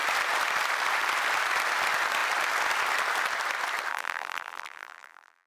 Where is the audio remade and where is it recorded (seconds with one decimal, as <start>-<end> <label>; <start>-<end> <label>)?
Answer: 0.0-3.9 recorded; 3.9-5.5 remade